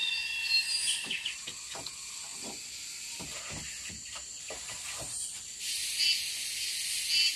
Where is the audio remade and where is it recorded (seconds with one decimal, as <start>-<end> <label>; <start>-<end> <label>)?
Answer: 0.0-7.4 recorded